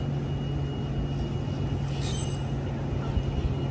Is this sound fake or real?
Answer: real